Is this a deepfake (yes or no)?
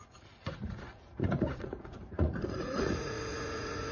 yes